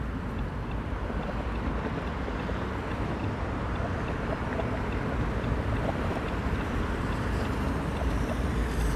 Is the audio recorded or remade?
remade